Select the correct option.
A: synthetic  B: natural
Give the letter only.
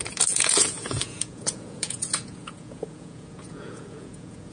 A